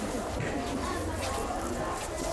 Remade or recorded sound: recorded